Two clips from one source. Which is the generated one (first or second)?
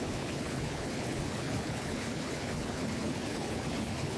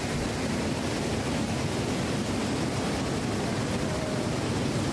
first